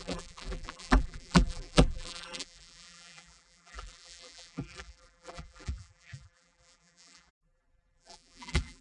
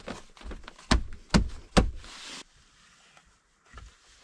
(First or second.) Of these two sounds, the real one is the second